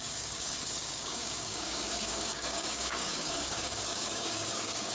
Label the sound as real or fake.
fake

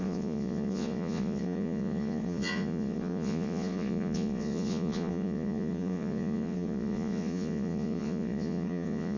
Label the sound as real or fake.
fake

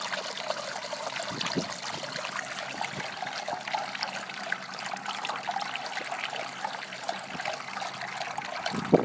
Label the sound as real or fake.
real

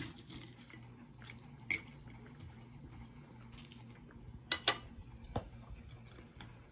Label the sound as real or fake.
real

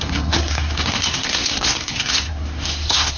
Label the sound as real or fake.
fake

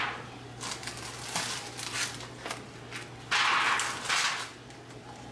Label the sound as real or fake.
real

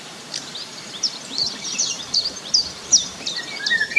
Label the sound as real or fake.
fake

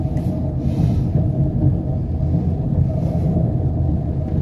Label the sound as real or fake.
real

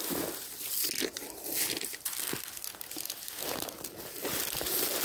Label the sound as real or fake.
real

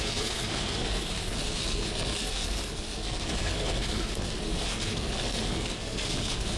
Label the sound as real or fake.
fake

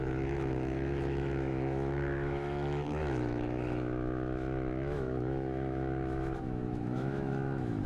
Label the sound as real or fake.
fake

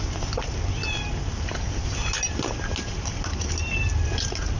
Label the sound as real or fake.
real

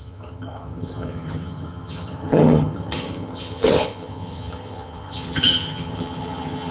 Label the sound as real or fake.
fake